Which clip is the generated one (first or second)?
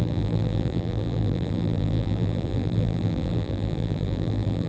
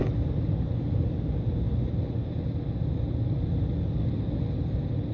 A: first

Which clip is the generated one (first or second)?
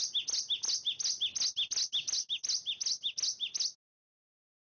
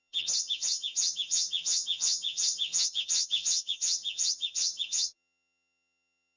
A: second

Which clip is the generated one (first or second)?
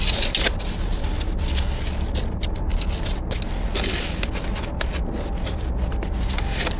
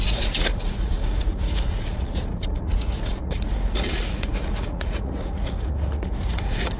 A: second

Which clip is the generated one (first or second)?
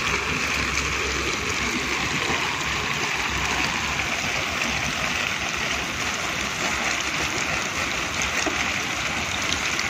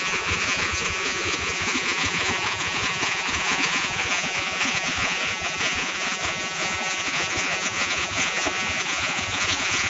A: second